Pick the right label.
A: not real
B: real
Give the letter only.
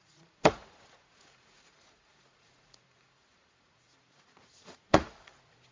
A